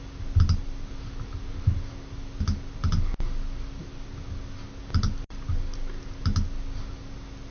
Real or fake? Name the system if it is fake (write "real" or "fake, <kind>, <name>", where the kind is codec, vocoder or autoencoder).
real